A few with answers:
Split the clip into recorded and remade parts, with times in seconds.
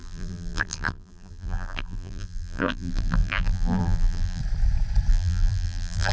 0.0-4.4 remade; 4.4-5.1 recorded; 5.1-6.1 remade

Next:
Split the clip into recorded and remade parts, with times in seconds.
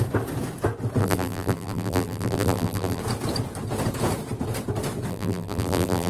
0.0-1.0 recorded; 1.0-3.0 remade; 3.0-5.1 recorded; 5.1-6.1 remade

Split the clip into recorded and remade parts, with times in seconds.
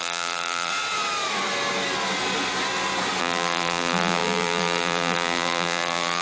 0.0-0.7 remade; 0.7-3.2 recorded; 3.2-6.2 remade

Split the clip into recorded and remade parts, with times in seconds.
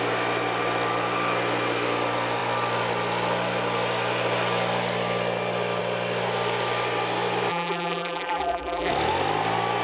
0.0-7.5 recorded; 7.5-8.9 remade; 8.9-9.8 recorded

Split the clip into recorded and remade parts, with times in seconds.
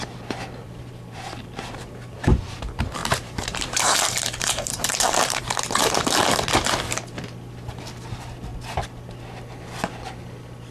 0.0-0.6 recorded; 0.6-2.6 remade; 2.6-3.0 recorded; 3.0-5.4 remade; 5.4-10.7 recorded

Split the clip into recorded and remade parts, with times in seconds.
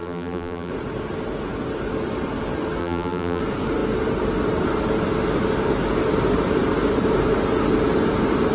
0.0-0.7 remade; 0.7-2.8 recorded; 2.8-3.4 remade; 3.4-8.5 recorded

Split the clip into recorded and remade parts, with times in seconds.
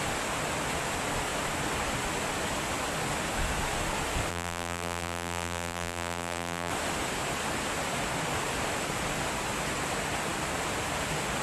0.0-4.3 recorded; 4.3-6.7 remade; 6.7-11.4 recorded